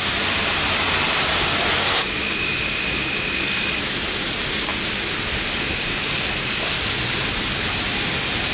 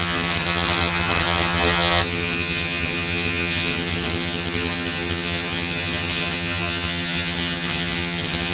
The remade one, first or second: second